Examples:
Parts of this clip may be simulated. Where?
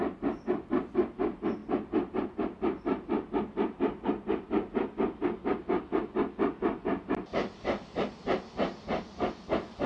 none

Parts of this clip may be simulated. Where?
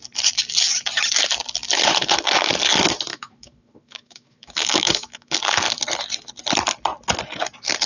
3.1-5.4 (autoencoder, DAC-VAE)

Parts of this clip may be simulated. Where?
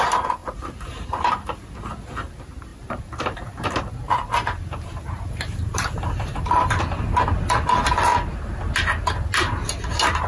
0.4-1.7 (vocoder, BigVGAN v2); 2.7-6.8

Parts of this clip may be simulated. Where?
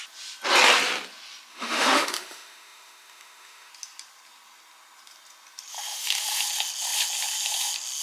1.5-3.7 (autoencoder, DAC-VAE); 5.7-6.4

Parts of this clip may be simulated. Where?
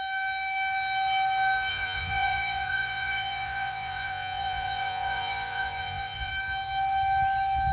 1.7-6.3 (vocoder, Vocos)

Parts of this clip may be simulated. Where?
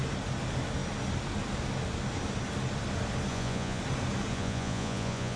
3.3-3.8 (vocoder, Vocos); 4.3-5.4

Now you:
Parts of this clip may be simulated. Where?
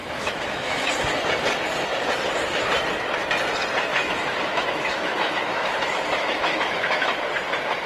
0.0-0.9 (autoencoder, DAC-VAE); 3.9-7.1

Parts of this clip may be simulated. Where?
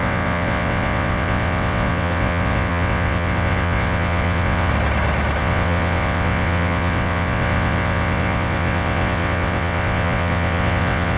0.0-4.7 (vocoder, WaveNeXt); 5.4-11.2